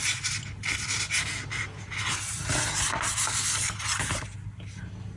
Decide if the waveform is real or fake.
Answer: real